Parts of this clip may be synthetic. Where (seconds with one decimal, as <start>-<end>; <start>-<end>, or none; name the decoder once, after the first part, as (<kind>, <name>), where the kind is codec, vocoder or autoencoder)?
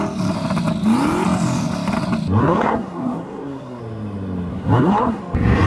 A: 2.4-3.8 (codec, SNAC); 4.5-5.2